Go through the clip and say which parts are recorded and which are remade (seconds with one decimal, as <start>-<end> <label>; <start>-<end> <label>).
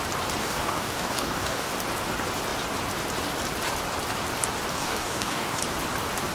0.0-0.4 recorded; 0.4-1.7 remade; 1.7-4.7 recorded; 4.7-5.6 remade; 5.6-6.3 recorded